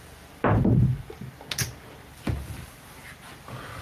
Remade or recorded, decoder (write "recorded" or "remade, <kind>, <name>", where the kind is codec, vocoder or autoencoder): recorded